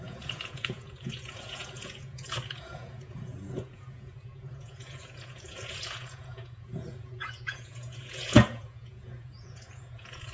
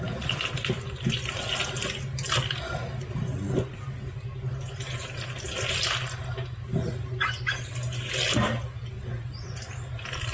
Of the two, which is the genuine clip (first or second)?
second